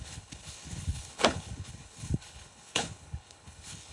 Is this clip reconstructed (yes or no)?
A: yes